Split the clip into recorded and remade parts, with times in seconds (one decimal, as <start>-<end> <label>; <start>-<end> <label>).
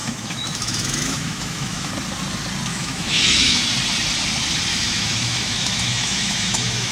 0.0-1.9 remade; 1.9-2.7 recorded; 2.7-3.6 remade; 3.6-4.7 recorded; 4.7-6.9 remade